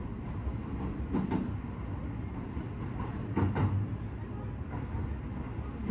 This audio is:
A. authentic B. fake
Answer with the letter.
A